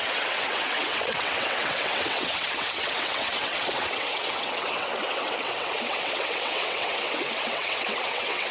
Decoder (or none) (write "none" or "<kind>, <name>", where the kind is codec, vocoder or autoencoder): vocoder, WaveNeXt